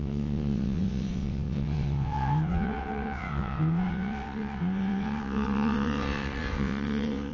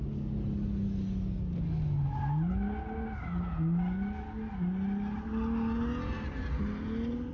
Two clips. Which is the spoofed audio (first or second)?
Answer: first